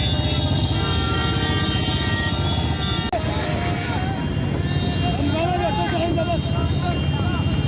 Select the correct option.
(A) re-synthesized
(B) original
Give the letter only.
B